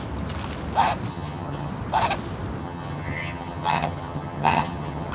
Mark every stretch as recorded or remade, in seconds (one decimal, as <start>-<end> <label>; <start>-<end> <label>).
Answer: 0.0-1.1 recorded; 1.1-1.7 remade; 1.7-2.6 recorded; 2.6-5.1 remade